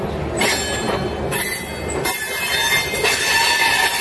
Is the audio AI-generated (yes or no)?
no